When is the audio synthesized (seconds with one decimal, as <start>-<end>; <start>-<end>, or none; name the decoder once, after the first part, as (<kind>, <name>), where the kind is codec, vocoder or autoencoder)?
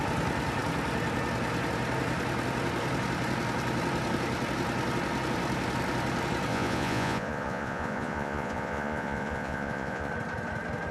6.5-10.1 (vocoder, Vocos)